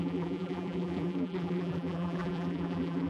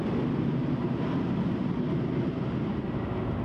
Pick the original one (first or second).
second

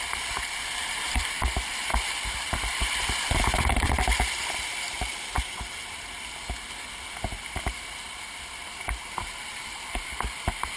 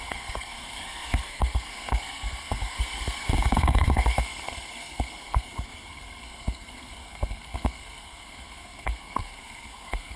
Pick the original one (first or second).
first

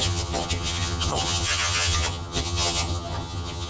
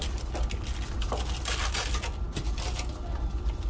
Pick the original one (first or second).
second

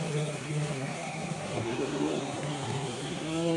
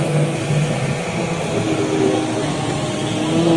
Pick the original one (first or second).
second